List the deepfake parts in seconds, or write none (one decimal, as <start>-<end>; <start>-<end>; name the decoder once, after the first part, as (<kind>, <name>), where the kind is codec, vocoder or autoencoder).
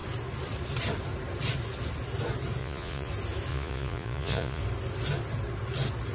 2.6-3.1 (vocoder, Vocos); 3.5-4.6